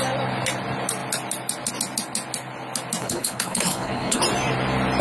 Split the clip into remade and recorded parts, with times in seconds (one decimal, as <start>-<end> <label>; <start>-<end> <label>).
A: 0.0-3.0 recorded; 3.0-4.2 remade; 4.2-5.0 recorded